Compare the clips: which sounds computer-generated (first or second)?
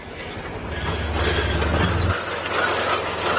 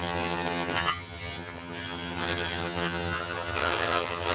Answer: second